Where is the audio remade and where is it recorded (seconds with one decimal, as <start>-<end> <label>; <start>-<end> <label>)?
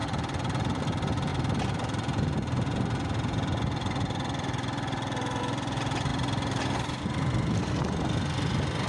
0.0-0.8 remade; 0.8-1.3 recorded; 1.3-5.4 remade; 5.4-8.9 recorded